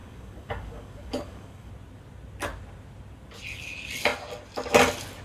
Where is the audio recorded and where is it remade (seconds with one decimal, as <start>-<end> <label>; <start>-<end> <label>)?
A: 0.0-1.7 remade; 1.7-5.2 recorded